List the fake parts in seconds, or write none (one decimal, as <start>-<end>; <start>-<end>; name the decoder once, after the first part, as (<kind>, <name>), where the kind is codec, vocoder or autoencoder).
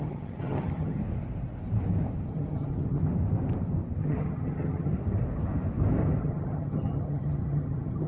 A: 0.0-1.0 (vocoder, HiFi-GAN); 2.3-3.0; 4.0-4.9; 6.2-8.1